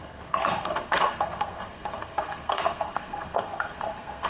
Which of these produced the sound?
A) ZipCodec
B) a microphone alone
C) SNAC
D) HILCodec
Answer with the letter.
C